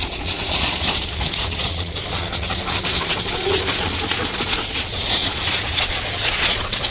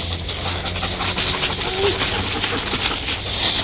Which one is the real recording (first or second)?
second